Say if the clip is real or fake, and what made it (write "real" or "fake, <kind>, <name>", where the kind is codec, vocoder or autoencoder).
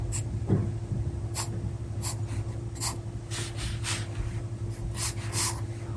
real